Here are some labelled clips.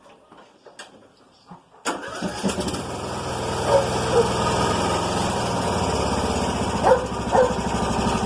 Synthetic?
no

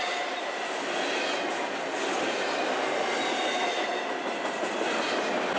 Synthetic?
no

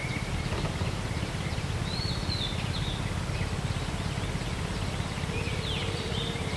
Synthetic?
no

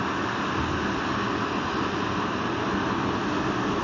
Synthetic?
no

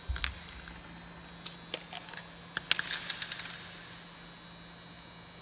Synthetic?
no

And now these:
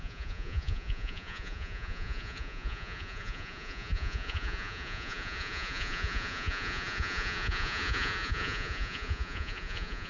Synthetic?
yes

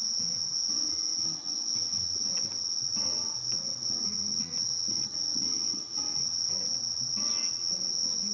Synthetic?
yes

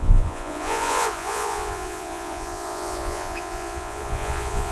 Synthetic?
yes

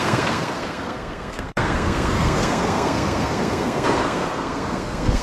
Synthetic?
yes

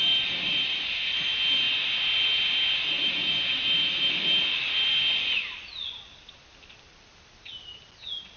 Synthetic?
no